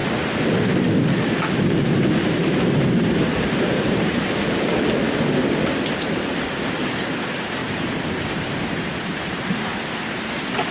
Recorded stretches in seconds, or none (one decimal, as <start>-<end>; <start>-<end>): 0.0-2.4; 4.2-7.6; 9.9-10.7